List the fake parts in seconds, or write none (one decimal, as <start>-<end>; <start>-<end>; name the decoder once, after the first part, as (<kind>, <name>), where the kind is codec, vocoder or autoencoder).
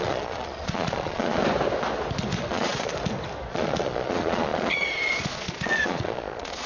0.0-1.4 (vocoder, Vocos); 2.5-2.9; 3.5-6.7